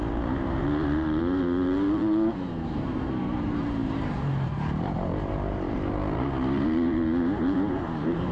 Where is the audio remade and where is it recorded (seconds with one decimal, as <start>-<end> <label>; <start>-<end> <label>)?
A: 0.0-8.3 remade